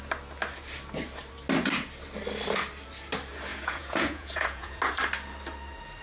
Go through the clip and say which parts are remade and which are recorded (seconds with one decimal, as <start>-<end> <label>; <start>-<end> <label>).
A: 0.0-3.5 recorded; 3.5-4.8 remade; 4.8-6.0 recorded